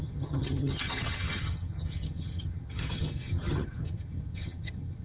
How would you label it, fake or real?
fake